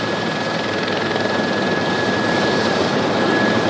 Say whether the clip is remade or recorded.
remade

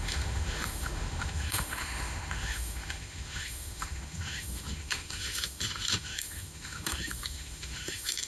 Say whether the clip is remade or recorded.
remade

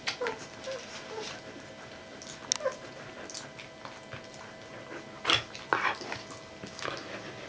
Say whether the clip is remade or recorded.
recorded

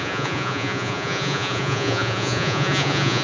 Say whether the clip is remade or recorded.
remade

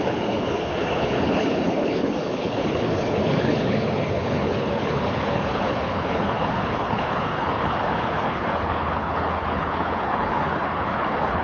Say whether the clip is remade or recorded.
remade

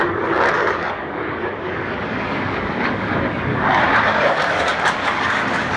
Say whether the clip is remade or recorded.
remade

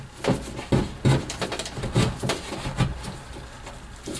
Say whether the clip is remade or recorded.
recorded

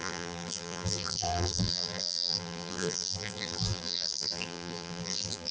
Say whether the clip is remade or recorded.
remade